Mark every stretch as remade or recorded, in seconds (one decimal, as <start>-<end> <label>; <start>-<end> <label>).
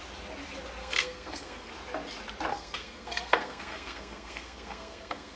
0.0-0.8 recorded; 0.8-1.7 remade; 1.7-2.5 recorded; 2.5-5.4 remade